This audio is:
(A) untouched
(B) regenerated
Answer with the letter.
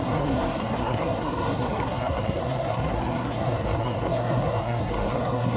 B